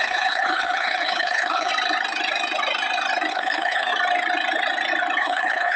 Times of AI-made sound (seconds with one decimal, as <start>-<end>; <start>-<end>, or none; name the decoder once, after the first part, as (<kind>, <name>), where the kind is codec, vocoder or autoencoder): 0.0-1.7 (codec, HILCodec); 3.3-3.9; 5.2-5.8